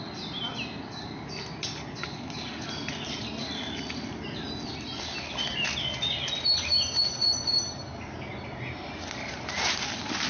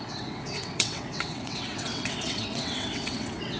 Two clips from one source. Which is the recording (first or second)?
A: first